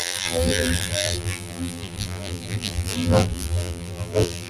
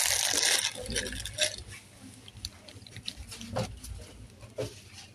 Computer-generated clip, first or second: first